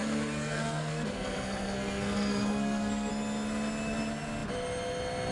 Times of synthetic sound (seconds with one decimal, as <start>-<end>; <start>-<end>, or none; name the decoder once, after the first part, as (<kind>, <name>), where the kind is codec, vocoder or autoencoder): 0.0-3.1 (codec, SNAC)

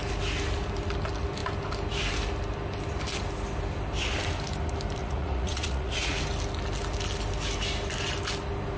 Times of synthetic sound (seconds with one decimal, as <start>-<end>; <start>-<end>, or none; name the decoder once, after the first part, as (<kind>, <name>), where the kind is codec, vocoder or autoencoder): 5.0-6.2 (vocoder, Vocos)

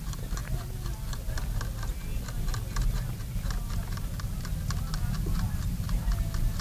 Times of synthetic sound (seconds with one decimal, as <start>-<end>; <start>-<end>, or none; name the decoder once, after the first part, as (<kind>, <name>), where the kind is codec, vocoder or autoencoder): 0.4-4.0 (vocoder, BigVGAN v2)